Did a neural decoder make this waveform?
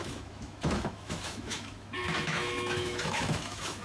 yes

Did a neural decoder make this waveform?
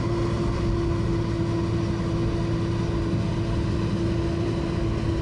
no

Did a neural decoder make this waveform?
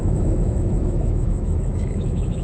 yes